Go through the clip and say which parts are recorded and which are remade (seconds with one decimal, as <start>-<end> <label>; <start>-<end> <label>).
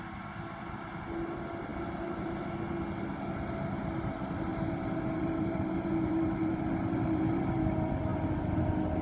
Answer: 0.0-1.7 recorded; 1.7-2.5 remade; 2.5-4.5 recorded; 4.5-7.7 remade; 7.7-8.1 recorded; 8.1-8.6 remade; 8.6-9.0 recorded